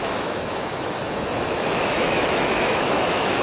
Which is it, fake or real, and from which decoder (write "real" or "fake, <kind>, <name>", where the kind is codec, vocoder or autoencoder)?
fake, autoencoder, DAC-VAE